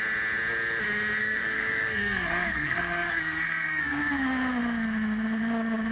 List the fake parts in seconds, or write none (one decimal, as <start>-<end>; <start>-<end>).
1.2-4.0